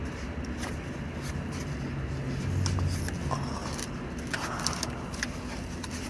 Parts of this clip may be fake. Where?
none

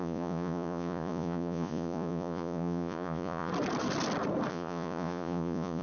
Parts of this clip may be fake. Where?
0.0-3.5 (vocoder, Vocos); 4.5-5.8